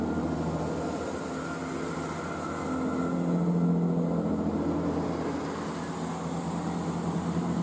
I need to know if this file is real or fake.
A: real